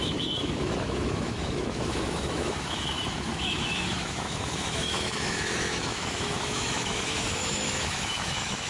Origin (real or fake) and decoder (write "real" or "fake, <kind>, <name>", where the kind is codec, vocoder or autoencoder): fake, autoencoder, DAC-VAE